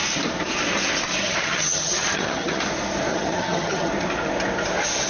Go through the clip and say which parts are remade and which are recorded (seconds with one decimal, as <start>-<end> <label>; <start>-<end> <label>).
0.0-1.2 recorded; 1.2-2.6 remade; 2.6-3.1 recorded; 3.1-3.9 remade; 3.9-5.1 recorded

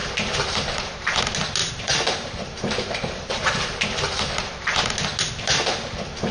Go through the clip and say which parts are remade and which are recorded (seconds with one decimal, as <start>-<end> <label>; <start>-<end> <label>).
0.0-1.2 remade; 1.2-1.6 recorded; 1.6-4.3 remade; 4.3-6.3 recorded

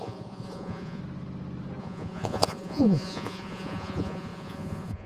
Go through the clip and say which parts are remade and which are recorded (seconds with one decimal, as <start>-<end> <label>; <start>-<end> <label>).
0.0-1.0 remade; 1.0-1.8 recorded; 1.8-5.1 remade

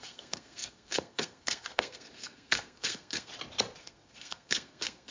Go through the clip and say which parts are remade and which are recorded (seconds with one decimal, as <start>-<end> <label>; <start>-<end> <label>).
0.0-3.3 remade; 3.3-3.8 recorded; 3.8-5.1 remade

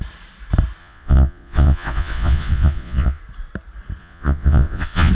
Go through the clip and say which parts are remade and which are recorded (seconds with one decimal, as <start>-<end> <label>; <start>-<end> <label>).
0.0-0.8 recorded; 0.8-3.2 remade; 3.2-4.0 recorded; 4.0-5.1 remade

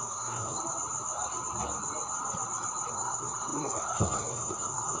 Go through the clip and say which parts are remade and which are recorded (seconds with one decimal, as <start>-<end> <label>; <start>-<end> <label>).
0.0-0.6 remade; 0.6-2.9 recorded; 2.9-5.0 remade